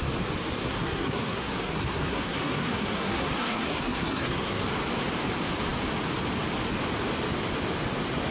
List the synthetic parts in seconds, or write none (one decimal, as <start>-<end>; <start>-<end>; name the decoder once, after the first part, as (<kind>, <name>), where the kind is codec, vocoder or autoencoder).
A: 0.6-4.6 (codec, SNAC)